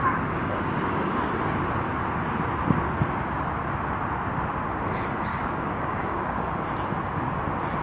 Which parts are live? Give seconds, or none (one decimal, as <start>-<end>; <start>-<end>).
1.3-5.3; 6.5-7.8